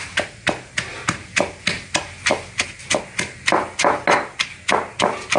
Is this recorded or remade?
recorded